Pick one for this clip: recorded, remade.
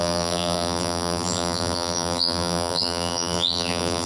remade